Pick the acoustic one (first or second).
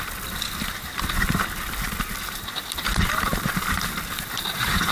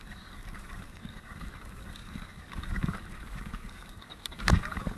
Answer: first